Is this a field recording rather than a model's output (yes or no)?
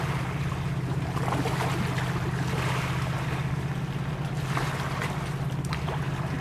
yes